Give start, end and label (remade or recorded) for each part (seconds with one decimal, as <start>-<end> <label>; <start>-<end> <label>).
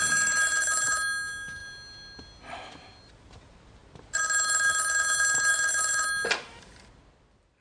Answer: 0.0-7.6 recorded